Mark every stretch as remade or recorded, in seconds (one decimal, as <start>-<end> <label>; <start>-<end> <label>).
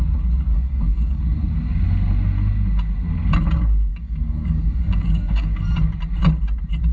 0.0-0.5 recorded; 0.5-1.2 remade; 1.2-3.9 recorded; 3.9-5.6 remade; 5.6-6.9 recorded